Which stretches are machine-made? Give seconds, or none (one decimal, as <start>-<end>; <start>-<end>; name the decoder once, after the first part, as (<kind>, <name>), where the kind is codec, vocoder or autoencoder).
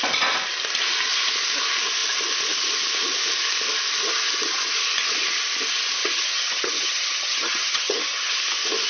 6.0-8.3 (vocoder, HiFi-GAN)